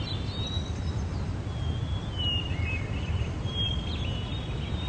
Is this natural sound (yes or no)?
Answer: yes